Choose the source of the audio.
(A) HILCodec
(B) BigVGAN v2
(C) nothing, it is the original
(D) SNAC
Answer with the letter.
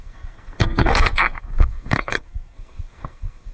D